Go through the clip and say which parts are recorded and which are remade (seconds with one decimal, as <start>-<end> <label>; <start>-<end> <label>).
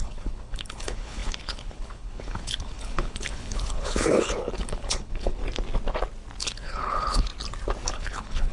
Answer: 0.0-5.4 remade; 5.4-6.4 recorded; 6.4-7.3 remade; 7.3-7.9 recorded; 7.9-8.5 remade